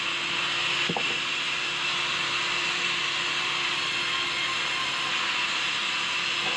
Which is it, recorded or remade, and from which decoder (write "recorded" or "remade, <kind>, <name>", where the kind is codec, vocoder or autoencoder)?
recorded